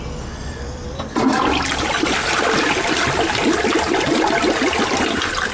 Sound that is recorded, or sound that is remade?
recorded